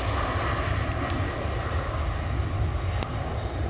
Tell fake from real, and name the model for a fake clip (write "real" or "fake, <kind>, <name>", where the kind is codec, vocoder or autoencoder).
real